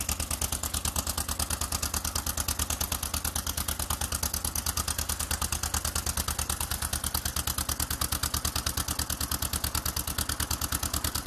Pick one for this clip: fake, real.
real